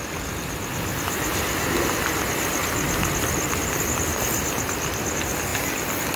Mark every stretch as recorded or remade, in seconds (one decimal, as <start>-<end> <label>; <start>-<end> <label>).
0.0-6.2 recorded